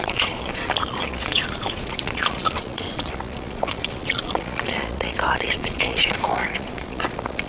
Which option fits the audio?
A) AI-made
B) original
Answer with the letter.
A